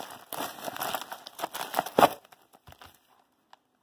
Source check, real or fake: real